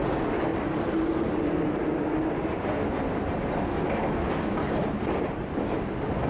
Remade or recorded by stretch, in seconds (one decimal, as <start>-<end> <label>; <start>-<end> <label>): 0.0-6.3 recorded